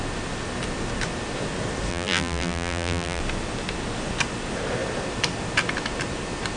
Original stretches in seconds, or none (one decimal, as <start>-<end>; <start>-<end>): 0.0-1.9; 3.2-6.6